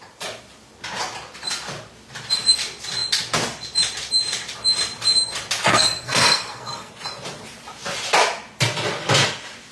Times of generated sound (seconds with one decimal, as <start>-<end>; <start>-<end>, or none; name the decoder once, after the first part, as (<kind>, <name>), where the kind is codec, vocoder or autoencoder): 5.7-6.9 (codec, SNAC)